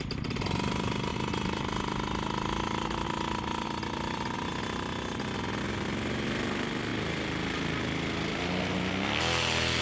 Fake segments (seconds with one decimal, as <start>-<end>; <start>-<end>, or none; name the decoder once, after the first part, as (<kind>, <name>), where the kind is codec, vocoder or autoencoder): none